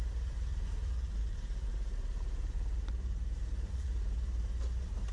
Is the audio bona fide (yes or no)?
no